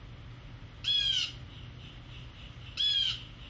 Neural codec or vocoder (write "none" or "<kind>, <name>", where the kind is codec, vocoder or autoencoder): none